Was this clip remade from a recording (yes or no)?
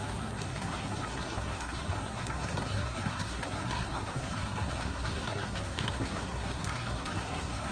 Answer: yes